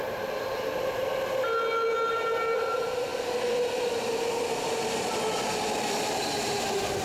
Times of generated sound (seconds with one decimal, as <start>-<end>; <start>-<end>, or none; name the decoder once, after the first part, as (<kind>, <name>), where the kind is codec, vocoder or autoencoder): 0.0-1.0 (vocoder, BigVGAN v2); 2.1-3.1; 6.1-7.0